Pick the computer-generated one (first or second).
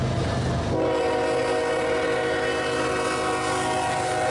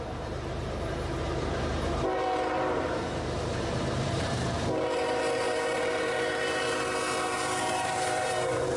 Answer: second